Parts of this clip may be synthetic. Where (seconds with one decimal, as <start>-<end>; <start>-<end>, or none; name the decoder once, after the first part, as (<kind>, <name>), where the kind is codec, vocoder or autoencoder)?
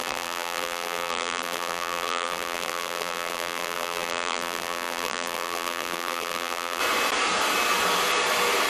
0.0-6.8 (vocoder, BigVGAN v2)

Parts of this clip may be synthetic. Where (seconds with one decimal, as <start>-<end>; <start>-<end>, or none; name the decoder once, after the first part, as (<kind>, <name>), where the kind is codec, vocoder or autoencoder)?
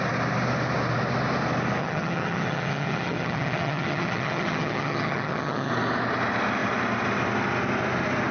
1.8-5.7 (vocoder, HiFi-GAN)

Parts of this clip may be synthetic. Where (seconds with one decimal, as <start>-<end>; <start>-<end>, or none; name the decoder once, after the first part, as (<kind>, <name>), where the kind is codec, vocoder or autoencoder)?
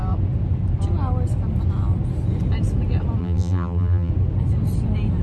3.2-4.1 (vocoder, BigVGAN v2)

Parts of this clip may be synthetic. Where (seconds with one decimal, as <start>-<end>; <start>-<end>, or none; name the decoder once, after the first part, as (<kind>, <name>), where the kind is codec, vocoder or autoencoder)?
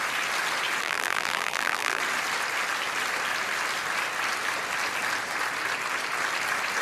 0.8-2.0 (vocoder, BigVGAN v2)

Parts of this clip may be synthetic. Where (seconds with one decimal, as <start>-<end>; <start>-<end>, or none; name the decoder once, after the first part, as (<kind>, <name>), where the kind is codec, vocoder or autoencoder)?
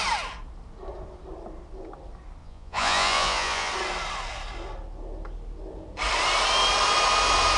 2.4-3.7 (vocoder, Vocos)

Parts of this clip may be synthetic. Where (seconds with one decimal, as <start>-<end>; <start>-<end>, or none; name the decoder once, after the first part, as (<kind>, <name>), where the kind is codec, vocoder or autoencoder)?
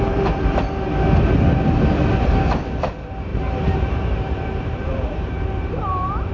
3.3-6.3 (vocoder, BigVGAN v2)